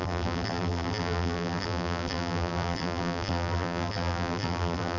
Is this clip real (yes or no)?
no